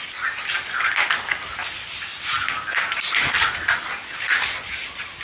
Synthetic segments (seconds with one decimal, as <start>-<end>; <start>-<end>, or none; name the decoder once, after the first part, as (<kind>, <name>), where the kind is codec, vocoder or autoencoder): none

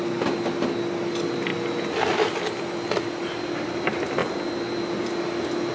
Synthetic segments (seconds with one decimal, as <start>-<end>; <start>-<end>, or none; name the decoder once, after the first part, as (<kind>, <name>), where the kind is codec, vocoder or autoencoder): none

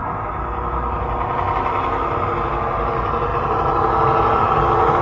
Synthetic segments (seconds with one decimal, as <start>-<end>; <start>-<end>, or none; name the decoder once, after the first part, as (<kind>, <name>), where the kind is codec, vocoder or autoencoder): none

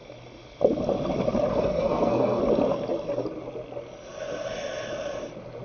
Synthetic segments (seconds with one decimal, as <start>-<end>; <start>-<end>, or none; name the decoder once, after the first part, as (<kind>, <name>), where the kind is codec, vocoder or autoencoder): 1.5-2.4 (codec, SNAC)

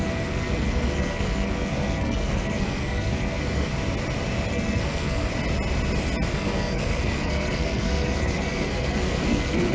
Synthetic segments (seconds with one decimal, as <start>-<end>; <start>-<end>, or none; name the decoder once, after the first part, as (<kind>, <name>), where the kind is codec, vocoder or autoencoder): 0.0-3.7 (codec, SNAC); 4.5-5.3; 6.3-9.7